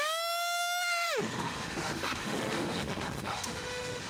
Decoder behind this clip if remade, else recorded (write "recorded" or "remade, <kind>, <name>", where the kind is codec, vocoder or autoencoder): remade, autoencoder, DAC-VAE